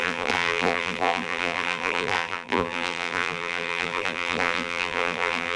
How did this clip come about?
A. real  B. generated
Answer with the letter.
B